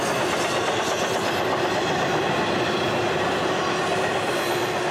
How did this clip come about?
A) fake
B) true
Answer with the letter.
B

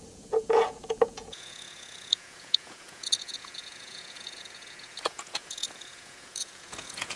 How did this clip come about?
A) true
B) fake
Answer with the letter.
B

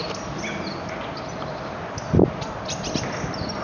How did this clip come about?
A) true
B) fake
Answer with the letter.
A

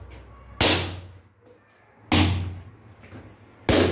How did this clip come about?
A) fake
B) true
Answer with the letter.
B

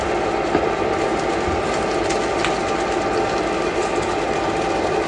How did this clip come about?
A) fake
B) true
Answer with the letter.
B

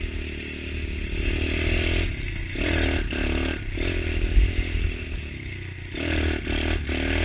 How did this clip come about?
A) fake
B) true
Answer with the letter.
B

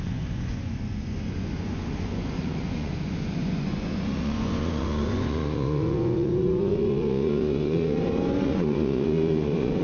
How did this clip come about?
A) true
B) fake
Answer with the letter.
B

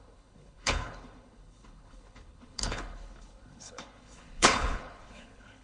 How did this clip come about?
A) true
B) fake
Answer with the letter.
B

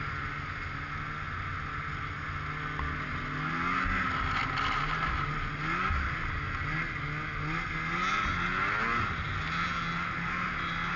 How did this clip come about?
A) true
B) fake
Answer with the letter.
A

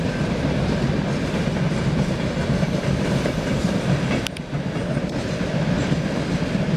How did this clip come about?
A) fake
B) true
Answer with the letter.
B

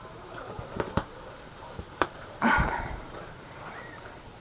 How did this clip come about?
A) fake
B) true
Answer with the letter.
A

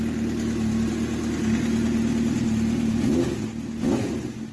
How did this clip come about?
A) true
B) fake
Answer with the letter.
A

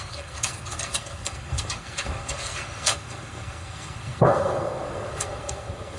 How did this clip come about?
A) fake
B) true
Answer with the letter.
A